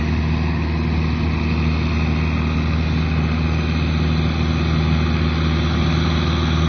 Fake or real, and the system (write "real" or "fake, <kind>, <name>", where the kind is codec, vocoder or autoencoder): real